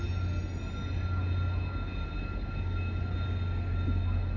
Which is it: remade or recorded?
recorded